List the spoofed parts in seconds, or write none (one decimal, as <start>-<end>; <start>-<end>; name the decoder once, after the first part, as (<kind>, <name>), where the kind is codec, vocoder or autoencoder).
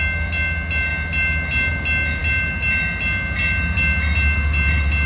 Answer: none